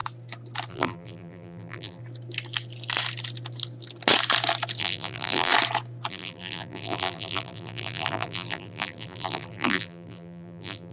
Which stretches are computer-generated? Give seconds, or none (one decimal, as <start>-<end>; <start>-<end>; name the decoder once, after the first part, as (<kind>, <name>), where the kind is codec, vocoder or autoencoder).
0.7-2.0 (vocoder, BigVGAN v2); 4.8-5.5; 6.1-10.9